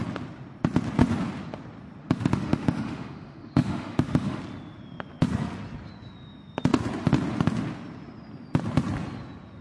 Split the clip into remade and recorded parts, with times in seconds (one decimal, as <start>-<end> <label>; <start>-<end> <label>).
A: 0.0-2.0 recorded; 2.0-4.4 remade; 4.4-9.6 recorded